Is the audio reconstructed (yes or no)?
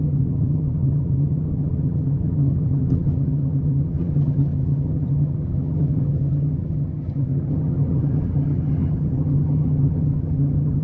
yes